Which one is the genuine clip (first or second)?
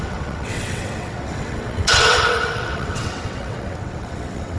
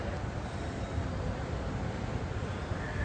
second